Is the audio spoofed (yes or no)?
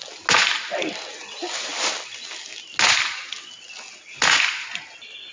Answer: no